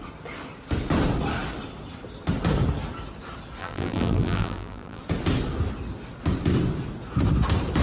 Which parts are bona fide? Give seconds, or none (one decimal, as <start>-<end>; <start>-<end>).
0.0-3.6; 5.0-7.8